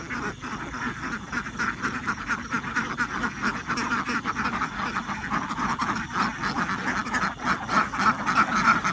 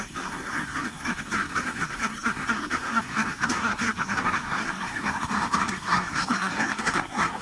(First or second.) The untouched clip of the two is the first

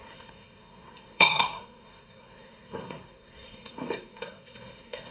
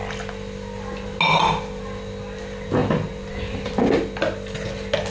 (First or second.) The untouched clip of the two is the second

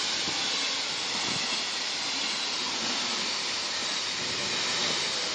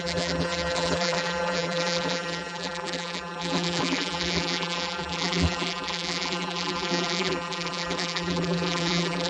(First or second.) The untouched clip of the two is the first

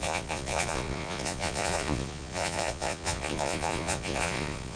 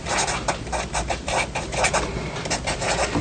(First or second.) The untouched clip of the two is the second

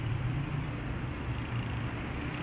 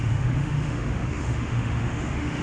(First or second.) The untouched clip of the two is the first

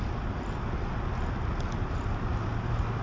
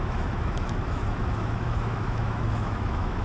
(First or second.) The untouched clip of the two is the first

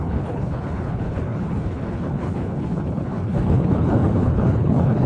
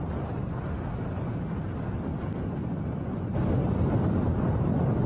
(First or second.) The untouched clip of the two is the second